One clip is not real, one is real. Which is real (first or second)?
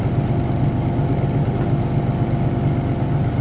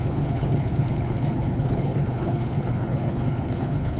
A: first